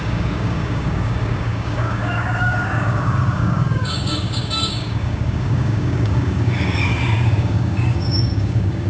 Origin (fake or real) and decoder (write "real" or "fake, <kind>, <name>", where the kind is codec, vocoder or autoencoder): fake, codec, DAC